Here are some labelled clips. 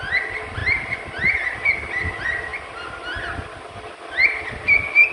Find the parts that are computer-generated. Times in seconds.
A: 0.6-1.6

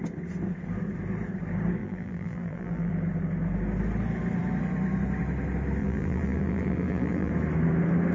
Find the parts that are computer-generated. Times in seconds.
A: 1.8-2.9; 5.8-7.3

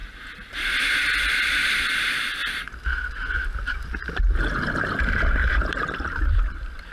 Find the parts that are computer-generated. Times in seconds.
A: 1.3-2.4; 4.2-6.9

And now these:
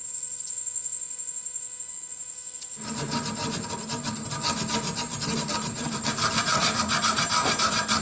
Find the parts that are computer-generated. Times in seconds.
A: 5.3-8.0

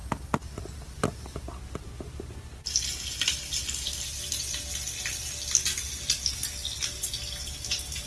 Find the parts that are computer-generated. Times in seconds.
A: none

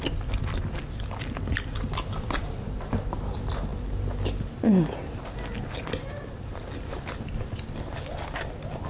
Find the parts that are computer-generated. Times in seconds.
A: none